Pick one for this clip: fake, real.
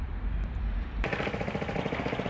real